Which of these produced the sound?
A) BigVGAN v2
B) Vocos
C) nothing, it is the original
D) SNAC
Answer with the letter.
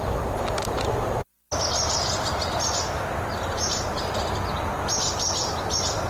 C